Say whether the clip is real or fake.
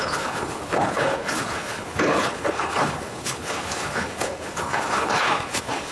fake